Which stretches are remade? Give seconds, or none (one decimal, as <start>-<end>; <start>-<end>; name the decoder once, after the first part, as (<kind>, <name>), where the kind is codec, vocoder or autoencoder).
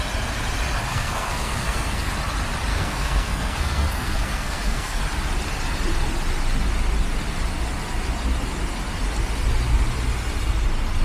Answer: 0.9-2.1 (codec, SNAC); 2.7-5.0